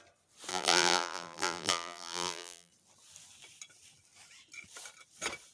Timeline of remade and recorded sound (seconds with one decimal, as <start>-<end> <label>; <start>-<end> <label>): 0.0-0.5 recorded; 0.5-2.7 remade; 2.7-5.5 recorded